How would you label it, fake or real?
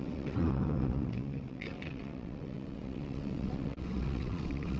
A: fake